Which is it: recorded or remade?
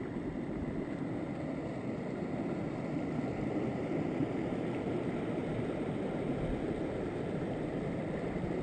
remade